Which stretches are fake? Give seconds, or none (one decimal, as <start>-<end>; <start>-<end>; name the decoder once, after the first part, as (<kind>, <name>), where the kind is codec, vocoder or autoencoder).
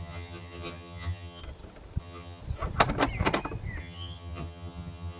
0.0-1.4 (vocoder, HiFi-GAN); 2.0-2.4; 3.8-5.2